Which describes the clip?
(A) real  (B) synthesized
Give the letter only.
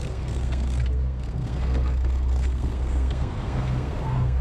B